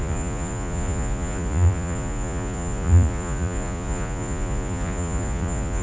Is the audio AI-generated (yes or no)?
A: yes